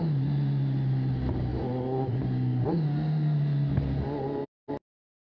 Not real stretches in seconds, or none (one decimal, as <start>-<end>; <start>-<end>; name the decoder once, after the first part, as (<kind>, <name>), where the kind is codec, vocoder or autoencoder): none